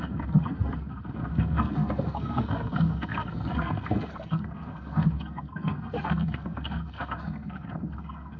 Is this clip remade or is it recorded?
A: remade